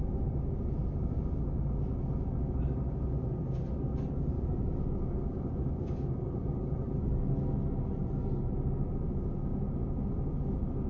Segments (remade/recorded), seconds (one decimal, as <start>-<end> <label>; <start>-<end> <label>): 0.0-10.9 recorded